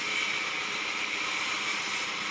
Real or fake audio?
real